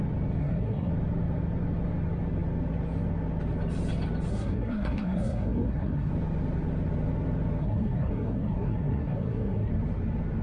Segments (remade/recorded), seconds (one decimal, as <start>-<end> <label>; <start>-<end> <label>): 0.0-0.4 recorded; 0.4-0.9 remade; 0.9-4.3 recorded; 4.3-6.1 remade; 6.1-7.6 recorded; 7.6-9.7 remade; 9.7-10.4 recorded

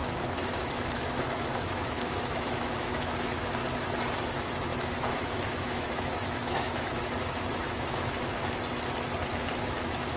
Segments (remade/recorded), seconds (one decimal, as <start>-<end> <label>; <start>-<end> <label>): 0.0-3.6 remade; 3.6-4.2 recorded; 4.2-8.4 remade; 8.4-9.3 recorded; 9.3-10.2 remade

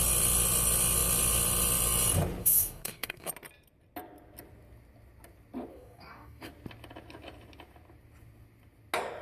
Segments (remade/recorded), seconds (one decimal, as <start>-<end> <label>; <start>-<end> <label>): 0.0-2.4 recorded; 2.4-3.3 remade; 3.3-5.7 recorded; 5.7-6.5 remade; 6.5-9.2 recorded